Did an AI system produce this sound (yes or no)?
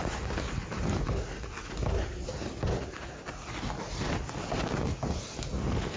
no